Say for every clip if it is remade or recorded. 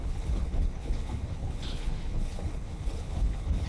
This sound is remade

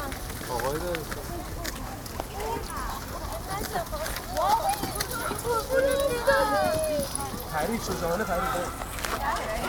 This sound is recorded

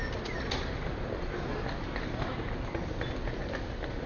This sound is recorded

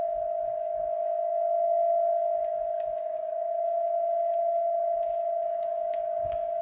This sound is remade